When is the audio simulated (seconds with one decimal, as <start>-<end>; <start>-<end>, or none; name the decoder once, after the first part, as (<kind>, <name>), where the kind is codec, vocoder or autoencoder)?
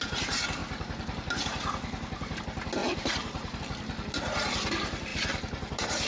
2.8-3.6 (vocoder, BigVGAN v2); 5.1-6.1